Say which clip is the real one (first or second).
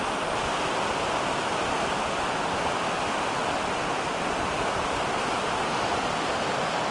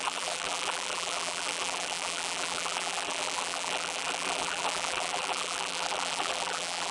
first